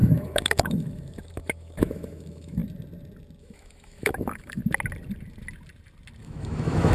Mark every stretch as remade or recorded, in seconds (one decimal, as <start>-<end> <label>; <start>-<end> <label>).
0.0-2.6 remade; 2.6-3.4 recorded; 3.4-4.6 remade; 4.6-6.2 recorded; 6.2-6.9 remade